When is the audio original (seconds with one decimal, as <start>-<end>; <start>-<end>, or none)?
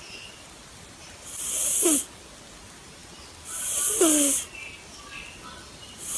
0.0-6.2